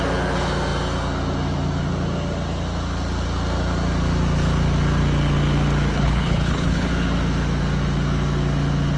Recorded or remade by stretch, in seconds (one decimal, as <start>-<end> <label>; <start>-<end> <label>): 0.0-5.9 recorded; 5.9-6.9 remade; 6.9-9.0 recorded